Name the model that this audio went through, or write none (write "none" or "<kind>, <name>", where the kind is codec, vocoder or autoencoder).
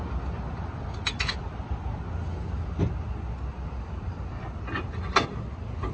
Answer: none